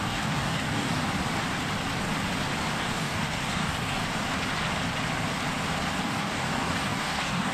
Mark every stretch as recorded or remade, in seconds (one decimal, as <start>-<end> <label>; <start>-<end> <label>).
0.0-1.0 remade; 1.0-2.8 recorded; 2.8-4.0 remade; 4.0-6.0 recorded; 6.0-7.5 remade